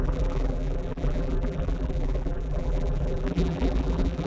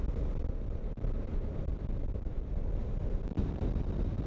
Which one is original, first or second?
second